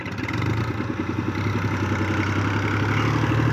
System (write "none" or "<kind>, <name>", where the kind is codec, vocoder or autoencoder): none